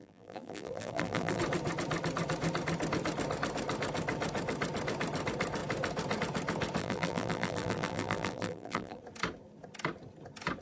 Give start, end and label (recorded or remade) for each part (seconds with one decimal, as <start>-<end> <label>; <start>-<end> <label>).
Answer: 0.0-1.4 remade; 1.4-6.8 recorded; 6.8-9.0 remade; 9.0-10.6 recorded